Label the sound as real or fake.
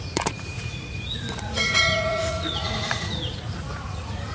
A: fake